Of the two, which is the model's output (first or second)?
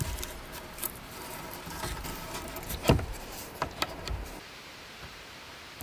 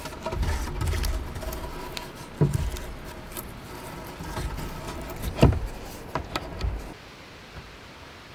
first